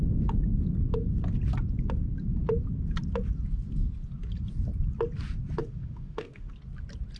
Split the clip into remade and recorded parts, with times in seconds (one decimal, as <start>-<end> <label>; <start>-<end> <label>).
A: 0.0-5.6 recorded; 5.6-6.5 remade; 6.5-7.2 recorded